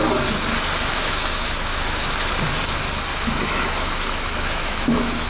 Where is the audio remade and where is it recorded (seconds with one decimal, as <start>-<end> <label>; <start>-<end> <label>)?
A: 0.0-0.9 recorded; 0.9-2.3 remade; 2.3-3.1 recorded; 3.1-5.3 remade